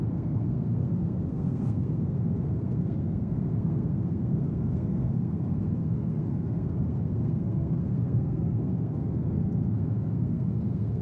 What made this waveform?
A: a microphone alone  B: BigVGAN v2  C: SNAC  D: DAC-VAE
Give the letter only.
C